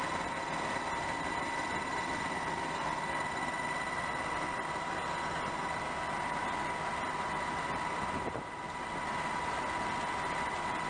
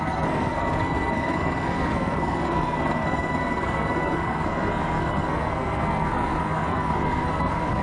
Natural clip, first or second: first